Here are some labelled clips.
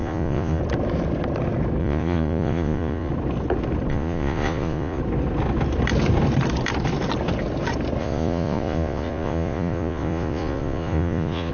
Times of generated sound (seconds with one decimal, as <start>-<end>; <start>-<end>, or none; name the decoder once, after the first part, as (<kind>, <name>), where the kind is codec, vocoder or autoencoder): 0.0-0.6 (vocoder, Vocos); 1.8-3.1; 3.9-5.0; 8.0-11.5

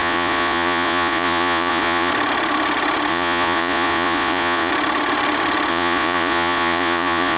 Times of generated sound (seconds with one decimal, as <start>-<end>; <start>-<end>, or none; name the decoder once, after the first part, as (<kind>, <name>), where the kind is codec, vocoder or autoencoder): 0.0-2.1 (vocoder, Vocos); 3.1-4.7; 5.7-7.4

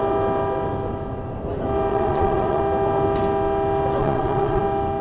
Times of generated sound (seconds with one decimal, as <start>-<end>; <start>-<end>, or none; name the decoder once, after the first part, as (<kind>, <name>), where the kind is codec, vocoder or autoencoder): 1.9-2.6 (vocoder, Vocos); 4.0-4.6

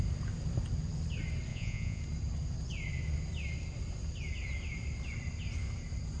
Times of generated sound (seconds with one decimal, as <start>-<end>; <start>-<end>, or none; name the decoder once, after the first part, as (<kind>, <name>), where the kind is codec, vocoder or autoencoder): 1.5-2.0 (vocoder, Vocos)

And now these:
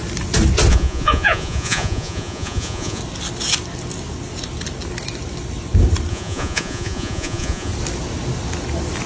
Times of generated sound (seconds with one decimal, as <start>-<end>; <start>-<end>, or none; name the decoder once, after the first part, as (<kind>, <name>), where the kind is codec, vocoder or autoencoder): 0.7-3.0 (vocoder, Vocos); 6.1-7.7